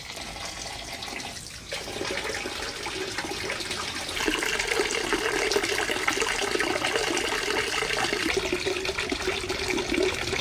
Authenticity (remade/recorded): recorded